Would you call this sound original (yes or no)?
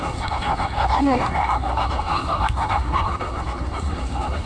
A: no